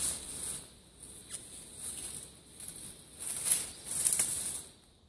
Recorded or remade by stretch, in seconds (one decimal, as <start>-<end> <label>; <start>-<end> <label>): 0.0-4.3 recorded; 4.3-5.1 remade